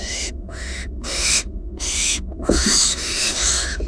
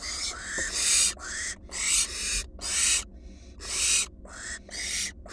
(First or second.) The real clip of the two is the second